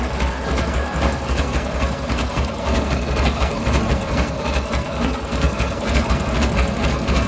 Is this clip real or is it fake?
fake